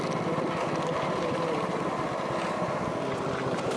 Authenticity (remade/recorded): recorded